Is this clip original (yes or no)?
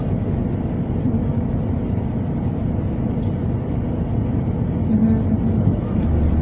yes